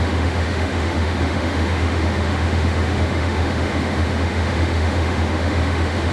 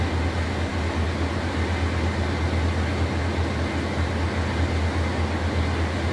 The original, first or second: second